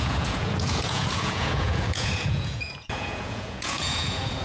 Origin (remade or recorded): remade